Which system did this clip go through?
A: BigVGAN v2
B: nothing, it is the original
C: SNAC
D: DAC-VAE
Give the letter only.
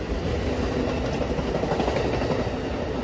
B